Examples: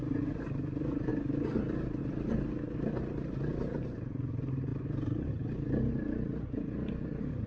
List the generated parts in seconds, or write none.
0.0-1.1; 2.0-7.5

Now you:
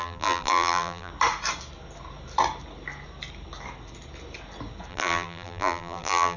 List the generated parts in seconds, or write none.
0.0-1.1; 4.9-6.4

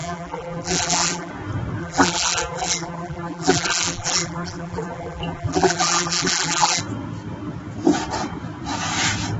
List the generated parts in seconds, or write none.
0.0-1.3; 1.8-6.8

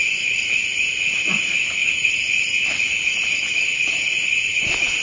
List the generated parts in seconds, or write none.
none

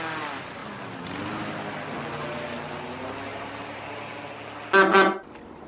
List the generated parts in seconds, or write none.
3.3-3.9

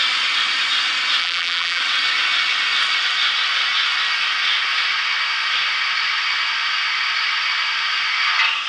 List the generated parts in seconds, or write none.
1.2-1.8